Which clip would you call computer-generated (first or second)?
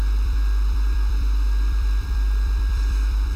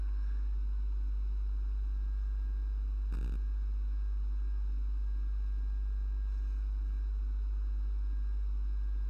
first